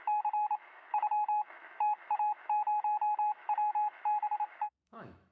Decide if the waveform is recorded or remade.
remade